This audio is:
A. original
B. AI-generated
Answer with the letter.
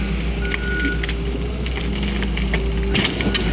A